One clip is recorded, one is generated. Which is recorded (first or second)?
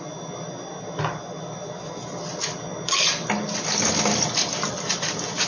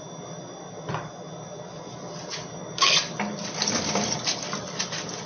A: first